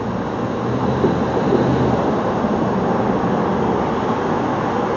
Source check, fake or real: real